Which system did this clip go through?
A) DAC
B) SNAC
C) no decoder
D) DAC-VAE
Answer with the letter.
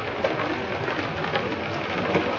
C